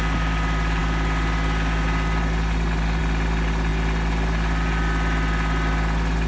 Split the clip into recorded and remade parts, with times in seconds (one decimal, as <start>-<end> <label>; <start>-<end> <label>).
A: 0.0-6.3 recorded